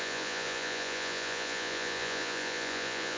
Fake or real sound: fake